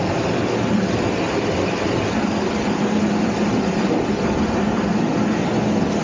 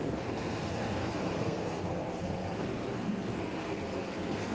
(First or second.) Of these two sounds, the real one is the first